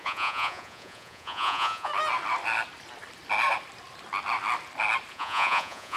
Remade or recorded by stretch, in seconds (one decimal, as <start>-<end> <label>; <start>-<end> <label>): 0.0-1.9 remade; 1.9-5.1 recorded; 5.1-6.0 remade